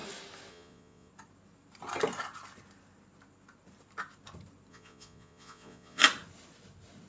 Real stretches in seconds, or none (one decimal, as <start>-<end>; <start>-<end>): 0.0-0.5; 1.1-4.7; 6.0-7.1